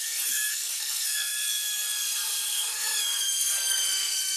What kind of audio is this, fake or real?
fake